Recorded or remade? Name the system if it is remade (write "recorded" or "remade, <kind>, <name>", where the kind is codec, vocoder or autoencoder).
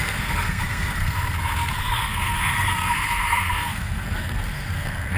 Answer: remade, codec, SNAC